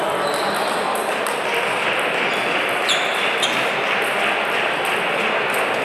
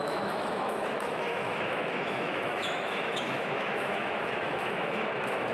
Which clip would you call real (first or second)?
first